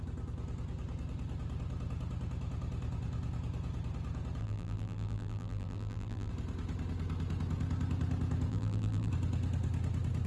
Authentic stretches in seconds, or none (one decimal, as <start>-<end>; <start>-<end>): 0.0-4.4; 6.3-8.5; 9.1-10.3